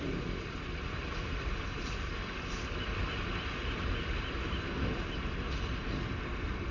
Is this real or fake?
real